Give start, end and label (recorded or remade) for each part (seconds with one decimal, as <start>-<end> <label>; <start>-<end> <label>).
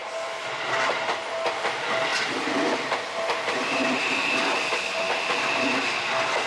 0.0-1.1 remade; 1.1-2.1 recorded; 2.1-6.0 remade; 6.0-6.5 recorded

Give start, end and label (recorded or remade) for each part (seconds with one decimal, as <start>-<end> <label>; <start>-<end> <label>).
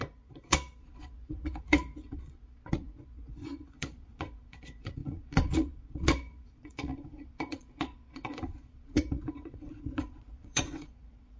0.0-11.4 remade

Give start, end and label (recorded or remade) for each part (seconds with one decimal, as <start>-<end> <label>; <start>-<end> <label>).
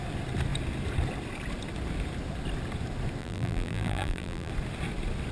0.0-3.2 recorded; 3.2-4.5 remade; 4.5-5.3 recorded